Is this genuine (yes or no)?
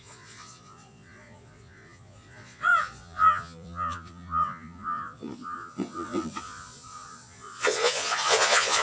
no